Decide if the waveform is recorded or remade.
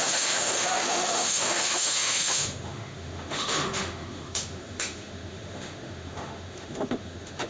remade